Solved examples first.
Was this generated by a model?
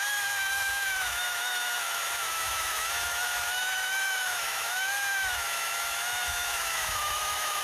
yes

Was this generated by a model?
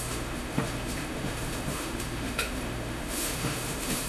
yes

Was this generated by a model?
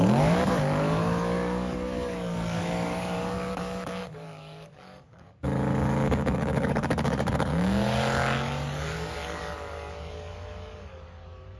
yes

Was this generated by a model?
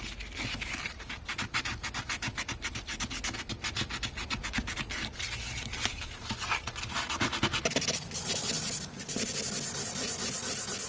no